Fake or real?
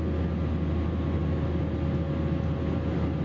real